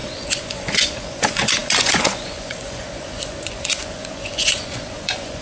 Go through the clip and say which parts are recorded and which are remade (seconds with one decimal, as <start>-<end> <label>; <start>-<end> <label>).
0.0-5.4 remade